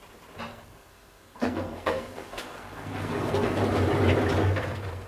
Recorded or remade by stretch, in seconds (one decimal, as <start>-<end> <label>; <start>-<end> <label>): 0.0-0.5 recorded; 0.5-3.6 remade; 3.6-4.4 recorded; 4.4-5.1 remade